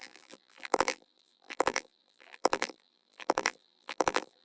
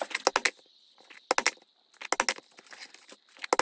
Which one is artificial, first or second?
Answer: first